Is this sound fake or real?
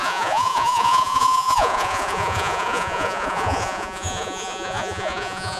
fake